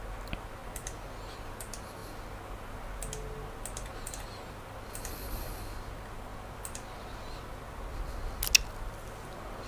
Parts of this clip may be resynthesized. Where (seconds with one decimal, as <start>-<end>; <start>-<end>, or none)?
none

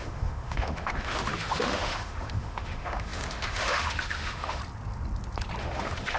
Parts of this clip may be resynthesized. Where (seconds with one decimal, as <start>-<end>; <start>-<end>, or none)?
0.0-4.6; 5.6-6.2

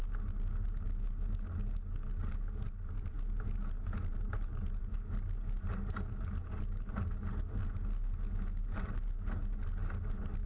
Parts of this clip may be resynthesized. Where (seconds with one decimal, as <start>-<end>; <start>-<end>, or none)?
none

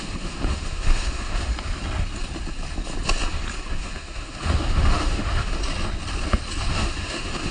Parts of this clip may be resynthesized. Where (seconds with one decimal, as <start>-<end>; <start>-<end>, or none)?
0.0-1.5; 3.7-5.6; 6.7-7.5

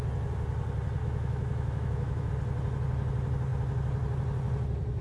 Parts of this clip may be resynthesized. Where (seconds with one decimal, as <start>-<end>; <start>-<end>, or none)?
1.0-2.3